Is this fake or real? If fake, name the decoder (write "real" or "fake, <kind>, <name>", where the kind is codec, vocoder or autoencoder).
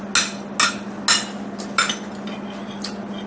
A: real